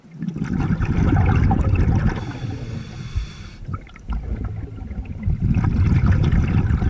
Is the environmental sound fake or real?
real